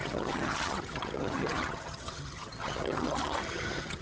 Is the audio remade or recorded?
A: remade